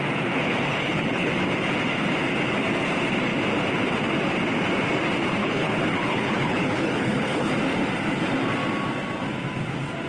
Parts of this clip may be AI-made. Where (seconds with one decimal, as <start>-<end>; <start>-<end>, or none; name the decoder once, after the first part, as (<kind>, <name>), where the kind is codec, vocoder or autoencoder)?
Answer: 0.7-1.3 (codec, HILCodec); 5.4-7.5

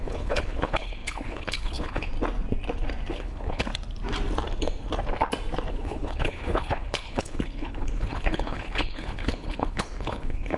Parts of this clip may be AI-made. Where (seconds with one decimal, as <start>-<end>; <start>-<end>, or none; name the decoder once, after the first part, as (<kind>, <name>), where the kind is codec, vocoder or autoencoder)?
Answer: 0.0-2.1 (codec, HILCodec); 3.1-3.7; 5.7-10.6

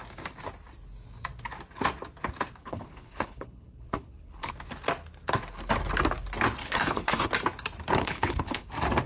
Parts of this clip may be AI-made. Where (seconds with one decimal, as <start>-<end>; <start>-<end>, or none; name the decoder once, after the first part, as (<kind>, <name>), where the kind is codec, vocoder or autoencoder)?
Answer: 2.6-4.5 (codec, HILCodec); 6.6-7.3; 8.0-8.7

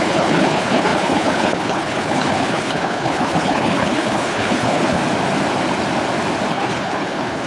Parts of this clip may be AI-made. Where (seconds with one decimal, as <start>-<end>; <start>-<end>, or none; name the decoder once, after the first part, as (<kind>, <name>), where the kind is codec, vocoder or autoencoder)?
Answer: 0.0-5.0 (codec, HILCodec); 6.5-7.5

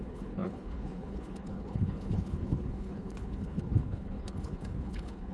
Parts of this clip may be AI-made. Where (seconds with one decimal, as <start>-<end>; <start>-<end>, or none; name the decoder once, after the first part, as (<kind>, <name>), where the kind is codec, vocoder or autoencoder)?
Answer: 0.0-5.3 (codec, HILCodec)

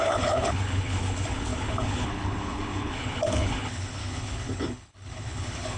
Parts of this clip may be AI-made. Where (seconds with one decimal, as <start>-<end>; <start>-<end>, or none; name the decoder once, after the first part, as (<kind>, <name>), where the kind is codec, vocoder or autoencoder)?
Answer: 0.0-5.8 (codec, HILCodec)

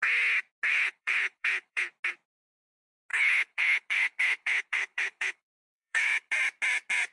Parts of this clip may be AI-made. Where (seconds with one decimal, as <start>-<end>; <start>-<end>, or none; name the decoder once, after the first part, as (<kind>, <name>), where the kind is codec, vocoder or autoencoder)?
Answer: 0.7-1.9 (codec, HILCodec); 3.1-6.3

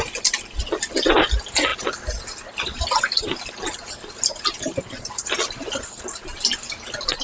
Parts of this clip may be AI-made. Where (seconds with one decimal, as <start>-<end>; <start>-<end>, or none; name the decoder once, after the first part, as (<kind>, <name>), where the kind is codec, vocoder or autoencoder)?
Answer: none